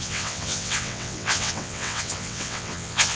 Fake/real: fake